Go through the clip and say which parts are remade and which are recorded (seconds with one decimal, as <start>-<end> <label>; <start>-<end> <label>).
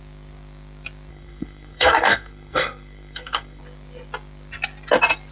0.0-1.1 recorded; 1.1-3.6 remade; 3.6-5.3 recorded